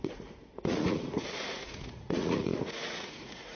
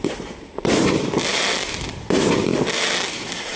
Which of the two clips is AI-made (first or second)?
first